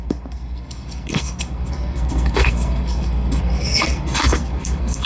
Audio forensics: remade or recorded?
remade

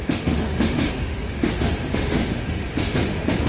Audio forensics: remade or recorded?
remade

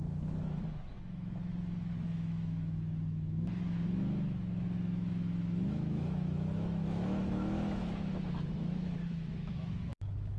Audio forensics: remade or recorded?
remade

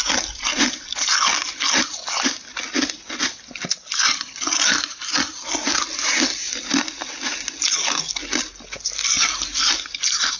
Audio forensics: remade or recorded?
recorded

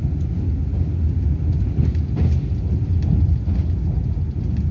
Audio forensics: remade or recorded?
recorded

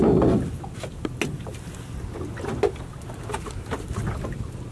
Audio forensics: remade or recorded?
recorded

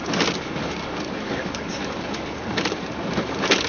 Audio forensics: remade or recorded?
remade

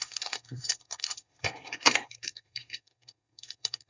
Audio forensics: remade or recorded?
remade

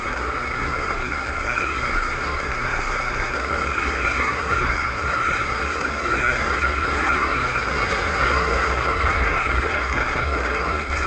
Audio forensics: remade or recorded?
remade